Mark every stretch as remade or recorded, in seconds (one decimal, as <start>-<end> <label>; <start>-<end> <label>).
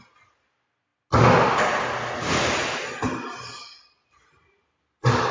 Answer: 0.0-5.3 recorded